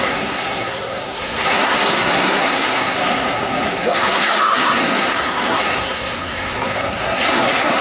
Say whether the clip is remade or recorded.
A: remade